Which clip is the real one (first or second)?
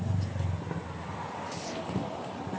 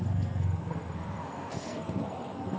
first